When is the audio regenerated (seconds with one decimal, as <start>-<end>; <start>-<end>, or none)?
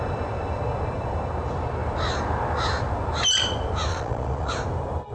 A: 3.9-4.5